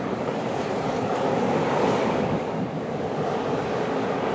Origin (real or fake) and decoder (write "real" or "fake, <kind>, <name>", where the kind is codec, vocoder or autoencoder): fake, codec, DAC